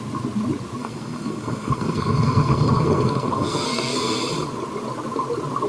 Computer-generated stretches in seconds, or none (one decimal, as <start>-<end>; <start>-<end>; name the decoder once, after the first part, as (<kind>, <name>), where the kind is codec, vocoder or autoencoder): 0.8-4.2 (codec, SNAC)